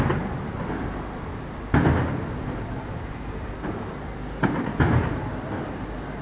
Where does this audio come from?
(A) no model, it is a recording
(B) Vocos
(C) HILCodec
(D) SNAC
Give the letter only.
A